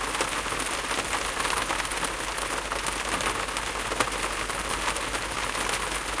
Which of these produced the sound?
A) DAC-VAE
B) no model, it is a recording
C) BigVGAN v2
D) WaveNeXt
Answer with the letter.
B